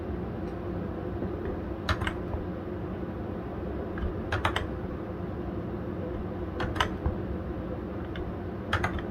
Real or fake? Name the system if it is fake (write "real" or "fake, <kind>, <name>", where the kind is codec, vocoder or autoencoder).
real